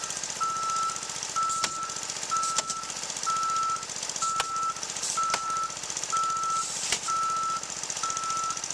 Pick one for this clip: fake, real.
real